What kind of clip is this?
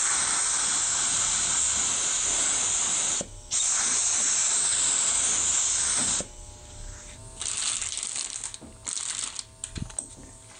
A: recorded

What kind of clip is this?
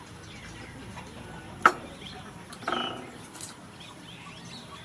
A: remade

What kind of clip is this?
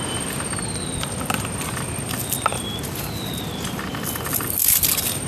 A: recorded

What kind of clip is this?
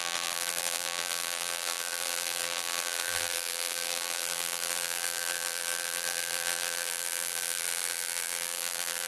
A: remade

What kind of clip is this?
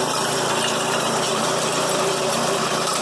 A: remade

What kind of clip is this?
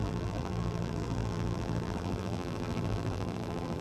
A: remade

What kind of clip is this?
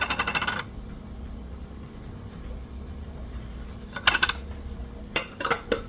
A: recorded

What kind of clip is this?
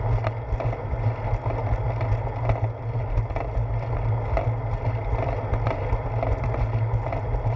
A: recorded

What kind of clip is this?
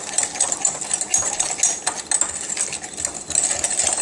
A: recorded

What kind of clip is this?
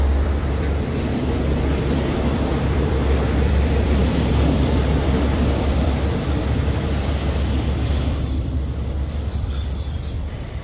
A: remade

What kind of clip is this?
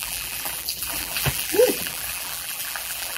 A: remade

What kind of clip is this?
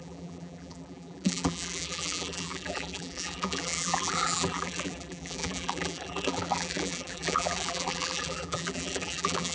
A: remade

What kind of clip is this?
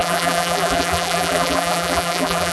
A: remade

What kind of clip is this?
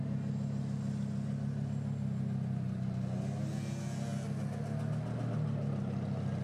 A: recorded